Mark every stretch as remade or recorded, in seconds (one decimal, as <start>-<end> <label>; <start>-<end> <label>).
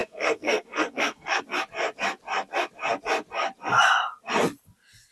0.0-1.4 remade; 1.4-5.1 recorded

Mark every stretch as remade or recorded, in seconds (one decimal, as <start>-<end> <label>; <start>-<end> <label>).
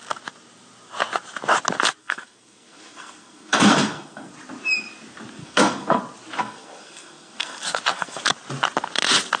0.0-2.0 recorded; 2.0-4.3 remade; 4.3-5.4 recorded; 5.4-6.0 remade; 6.0-6.4 recorded; 6.4-8.2 remade; 8.2-9.4 recorded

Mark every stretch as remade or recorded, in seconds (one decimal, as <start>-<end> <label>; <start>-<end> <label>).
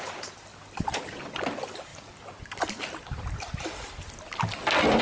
0.0-5.0 recorded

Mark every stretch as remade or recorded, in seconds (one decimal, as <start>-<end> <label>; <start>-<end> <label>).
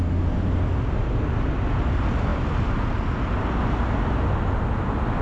0.0-5.2 recorded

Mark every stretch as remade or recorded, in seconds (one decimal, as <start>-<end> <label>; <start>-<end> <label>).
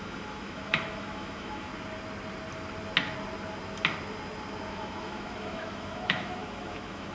0.0-1.7 remade; 1.7-4.7 recorded; 4.7-7.1 remade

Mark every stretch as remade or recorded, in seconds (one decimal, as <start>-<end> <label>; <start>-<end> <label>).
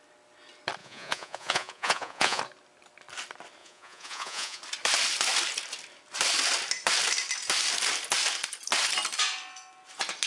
0.0-0.8 recorded; 0.8-2.4 remade; 2.4-3.6 recorded; 3.6-4.6 remade; 4.6-10.3 recorded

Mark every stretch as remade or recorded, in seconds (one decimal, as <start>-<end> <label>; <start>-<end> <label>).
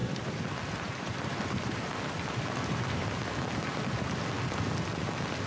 0.0-3.3 remade; 3.3-5.5 recorded